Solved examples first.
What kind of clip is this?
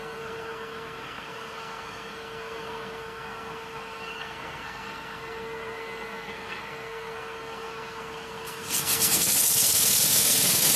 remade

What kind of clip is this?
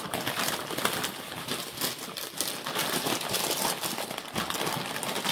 remade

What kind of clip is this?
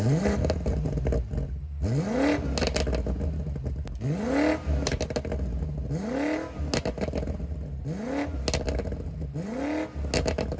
recorded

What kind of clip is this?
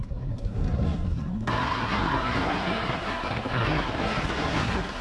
remade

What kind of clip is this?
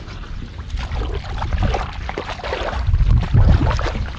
recorded